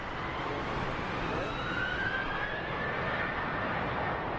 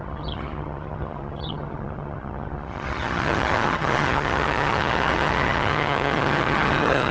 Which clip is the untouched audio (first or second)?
first